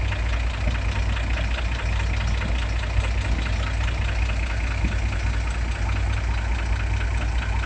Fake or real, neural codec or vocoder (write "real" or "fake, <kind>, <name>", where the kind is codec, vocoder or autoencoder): real